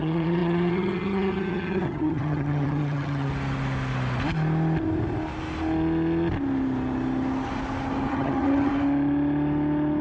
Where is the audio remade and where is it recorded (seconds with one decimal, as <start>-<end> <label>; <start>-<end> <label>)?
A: 0.0-3.3 remade; 3.3-8.1 recorded; 8.1-8.7 remade; 8.7-10.0 recorded